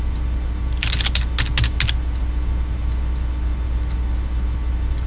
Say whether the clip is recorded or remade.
recorded